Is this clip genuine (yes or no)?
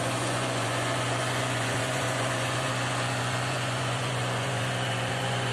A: no